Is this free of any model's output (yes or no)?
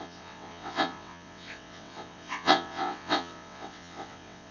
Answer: no